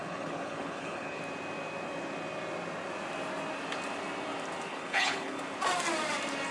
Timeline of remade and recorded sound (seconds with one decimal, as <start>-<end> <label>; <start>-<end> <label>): 0.0-1.2 remade; 1.2-4.7 recorded; 4.7-5.4 remade; 5.4-6.5 recorded